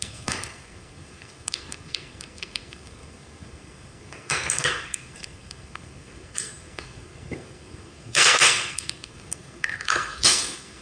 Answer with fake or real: fake